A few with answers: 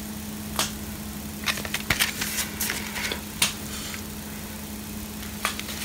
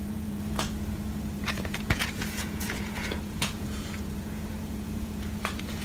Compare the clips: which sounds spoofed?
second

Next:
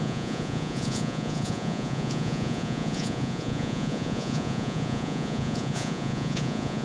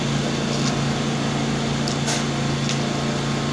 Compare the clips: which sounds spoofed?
first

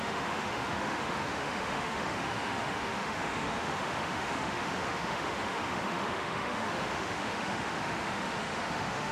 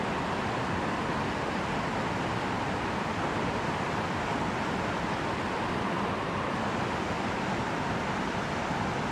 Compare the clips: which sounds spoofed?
first